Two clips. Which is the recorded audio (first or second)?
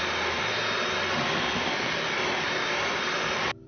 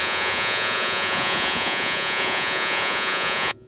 first